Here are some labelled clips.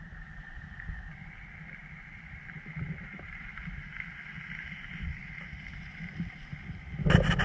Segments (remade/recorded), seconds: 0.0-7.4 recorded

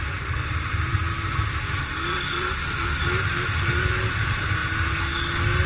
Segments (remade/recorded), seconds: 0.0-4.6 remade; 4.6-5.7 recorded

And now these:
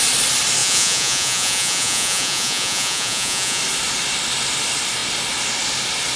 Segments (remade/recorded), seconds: 0.0-0.6 recorded; 0.6-3.6 remade; 3.6-6.2 recorded

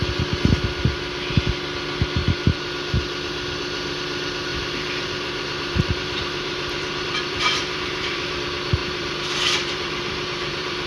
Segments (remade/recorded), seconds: 0.0-2.2 recorded; 2.2-2.7 remade; 2.7-4.5 recorded; 4.5-8.4 remade; 8.4-8.8 recorded; 8.8-10.9 remade

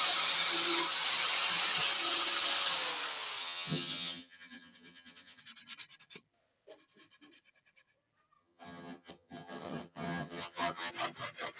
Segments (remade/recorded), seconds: 0.0-3.4 recorded; 3.4-5.4 remade; 5.4-8.4 recorded; 8.4-10.9 remade; 10.9-11.6 recorded

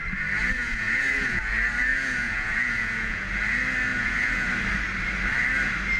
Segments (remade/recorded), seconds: 0.0-0.6 recorded; 0.6-1.4 remade; 1.4-1.9 recorded; 1.9-3.3 remade; 3.3-3.9 recorded; 3.9-4.5 remade; 4.5-6.0 recorded

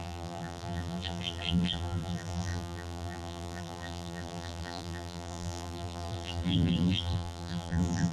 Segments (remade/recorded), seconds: 0.0-8.1 remade